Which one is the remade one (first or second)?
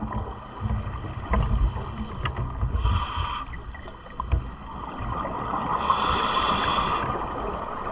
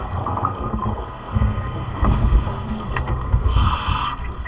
second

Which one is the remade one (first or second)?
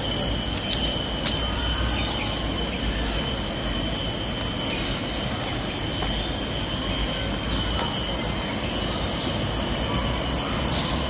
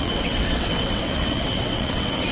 second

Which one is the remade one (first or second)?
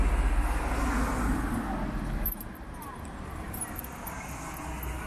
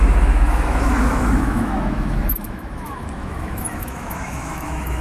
second